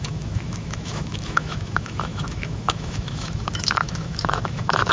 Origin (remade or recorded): remade